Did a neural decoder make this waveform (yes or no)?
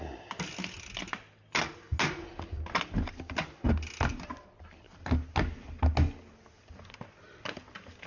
no